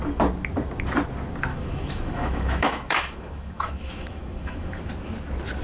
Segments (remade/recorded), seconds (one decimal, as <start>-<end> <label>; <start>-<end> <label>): 0.0-1.5 recorded; 1.5-4.9 remade; 4.9-5.6 recorded